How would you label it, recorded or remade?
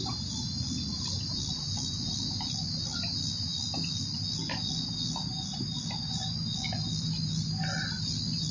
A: recorded